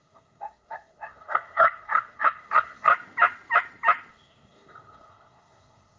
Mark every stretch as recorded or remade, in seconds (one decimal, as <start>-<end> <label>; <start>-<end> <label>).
0.0-2.9 remade; 2.9-4.1 recorded; 4.1-6.0 remade